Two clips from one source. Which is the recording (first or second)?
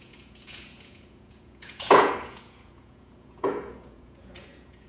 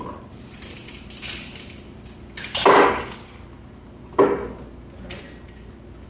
second